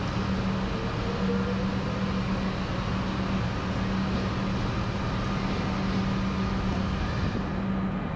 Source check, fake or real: real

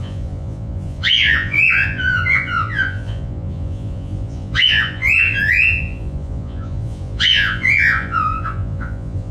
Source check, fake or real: fake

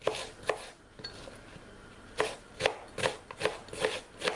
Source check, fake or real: real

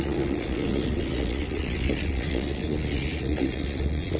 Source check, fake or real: fake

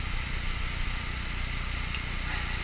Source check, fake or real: real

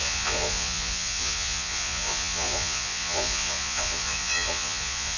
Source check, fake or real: fake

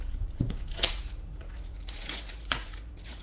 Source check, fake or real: fake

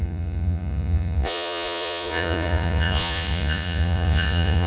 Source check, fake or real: fake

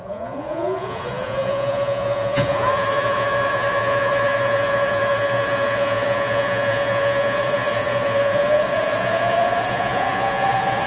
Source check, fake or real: fake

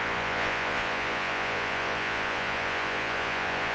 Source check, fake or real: fake